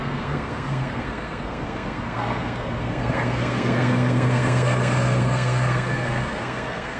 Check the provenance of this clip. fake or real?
fake